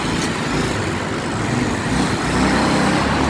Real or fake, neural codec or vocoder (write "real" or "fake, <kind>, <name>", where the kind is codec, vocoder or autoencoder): real